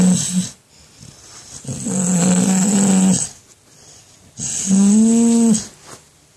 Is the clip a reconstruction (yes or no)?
no